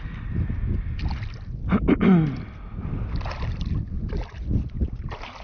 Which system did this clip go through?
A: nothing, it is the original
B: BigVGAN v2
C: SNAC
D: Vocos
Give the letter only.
A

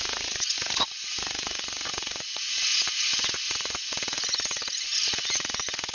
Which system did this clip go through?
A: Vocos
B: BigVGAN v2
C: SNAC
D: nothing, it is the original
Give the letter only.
A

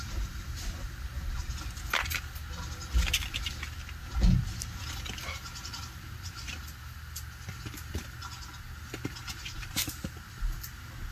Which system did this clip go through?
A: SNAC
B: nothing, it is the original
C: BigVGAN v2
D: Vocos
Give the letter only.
B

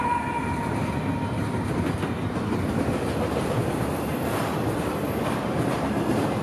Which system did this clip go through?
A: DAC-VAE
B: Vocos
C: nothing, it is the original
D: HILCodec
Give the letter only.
C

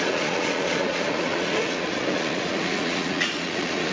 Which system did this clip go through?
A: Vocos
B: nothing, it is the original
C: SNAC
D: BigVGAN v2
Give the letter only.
A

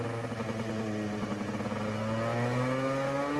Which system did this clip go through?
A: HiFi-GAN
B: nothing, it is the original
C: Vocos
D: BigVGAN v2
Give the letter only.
B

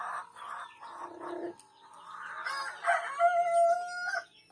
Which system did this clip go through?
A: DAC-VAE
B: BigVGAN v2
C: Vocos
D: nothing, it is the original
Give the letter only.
D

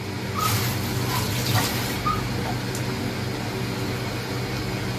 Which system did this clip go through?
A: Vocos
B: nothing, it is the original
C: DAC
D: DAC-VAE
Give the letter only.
B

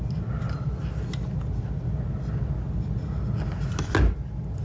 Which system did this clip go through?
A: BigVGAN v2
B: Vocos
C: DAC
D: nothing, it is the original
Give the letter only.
D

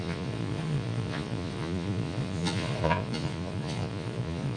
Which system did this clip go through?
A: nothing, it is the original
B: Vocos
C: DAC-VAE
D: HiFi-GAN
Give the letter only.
B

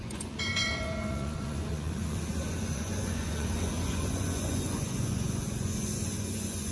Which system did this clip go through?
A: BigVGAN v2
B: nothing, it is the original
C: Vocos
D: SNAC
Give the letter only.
C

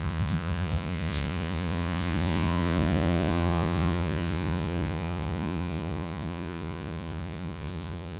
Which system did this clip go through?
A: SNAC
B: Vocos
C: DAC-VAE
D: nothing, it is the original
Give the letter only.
B